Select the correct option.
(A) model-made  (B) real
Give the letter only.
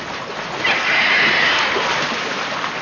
B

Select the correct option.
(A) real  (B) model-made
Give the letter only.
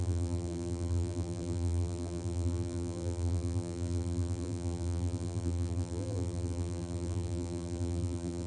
B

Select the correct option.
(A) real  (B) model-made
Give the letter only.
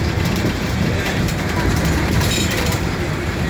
B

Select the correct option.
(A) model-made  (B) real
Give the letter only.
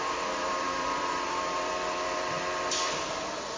A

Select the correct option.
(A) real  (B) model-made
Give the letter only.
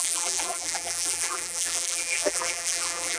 B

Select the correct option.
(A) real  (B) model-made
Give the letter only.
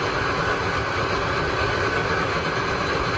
A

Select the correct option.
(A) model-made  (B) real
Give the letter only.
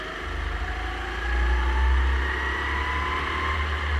B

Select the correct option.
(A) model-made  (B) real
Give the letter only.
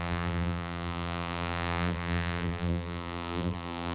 A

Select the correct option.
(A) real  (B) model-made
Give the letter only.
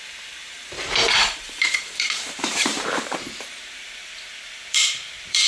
B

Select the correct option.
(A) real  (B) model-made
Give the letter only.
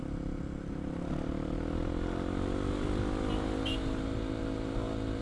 A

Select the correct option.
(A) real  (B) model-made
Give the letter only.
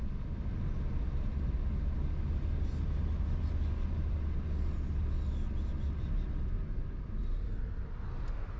A